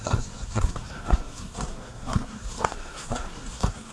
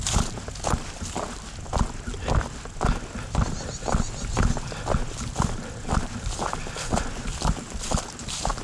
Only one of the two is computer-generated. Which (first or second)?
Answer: first